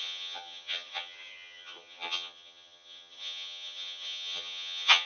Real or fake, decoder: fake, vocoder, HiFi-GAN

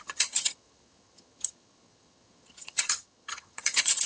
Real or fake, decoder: fake, vocoder, HiFi-GAN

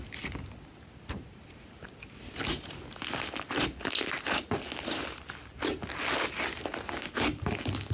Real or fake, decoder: real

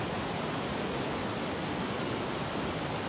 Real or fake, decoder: real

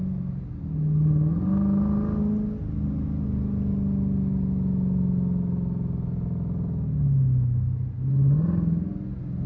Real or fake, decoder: real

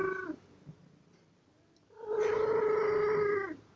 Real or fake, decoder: real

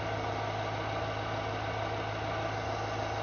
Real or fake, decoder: real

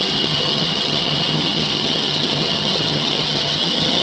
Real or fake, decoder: fake, vocoder, HiFi-GAN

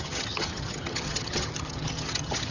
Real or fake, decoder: fake, vocoder, HiFi-GAN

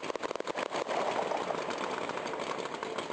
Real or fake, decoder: real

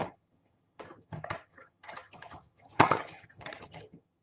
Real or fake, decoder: fake, vocoder, HiFi-GAN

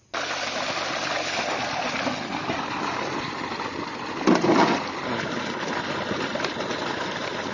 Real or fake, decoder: real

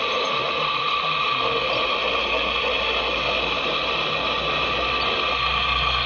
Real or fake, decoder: real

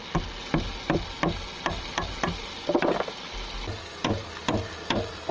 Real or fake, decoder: real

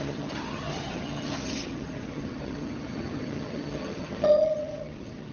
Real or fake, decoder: fake, vocoder, HiFi-GAN